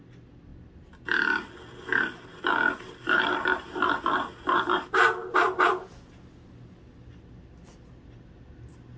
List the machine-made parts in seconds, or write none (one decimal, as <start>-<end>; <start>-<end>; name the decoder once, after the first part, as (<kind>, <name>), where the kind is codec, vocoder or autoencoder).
0.5-1.5 (vocoder, BigVGAN v2); 1.9-6.8